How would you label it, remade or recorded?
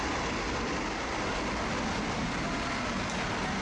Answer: recorded